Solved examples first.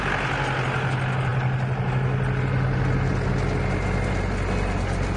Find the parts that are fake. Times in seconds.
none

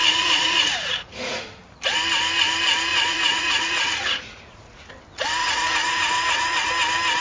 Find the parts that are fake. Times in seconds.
0.0-1.5 (vocoder, Vocos); 2.9-4.9; 5.4-6.7

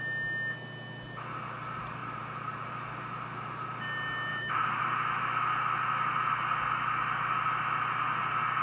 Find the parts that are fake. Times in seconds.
2.0-2.7 (vocoder, BigVGAN v2); 4.3-4.9

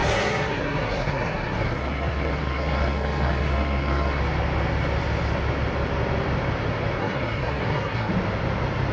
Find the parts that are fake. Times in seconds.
0.0-4.2 (codec, SNAC); 7.0-8.1

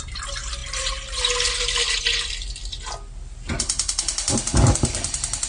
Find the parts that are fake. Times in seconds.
0.0-0.6 (vocoder, BigVGAN v2); 2.0-2.6; 4.7-5.5

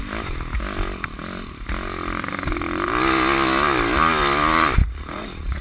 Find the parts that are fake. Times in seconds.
4.8-5.6 (vocoder, Vocos)

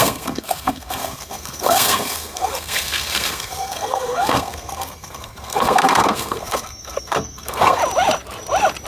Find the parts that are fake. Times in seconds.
0.0-7.8 (codec, SNAC)